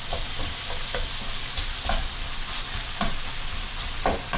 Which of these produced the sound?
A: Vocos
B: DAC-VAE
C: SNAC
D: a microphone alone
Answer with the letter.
D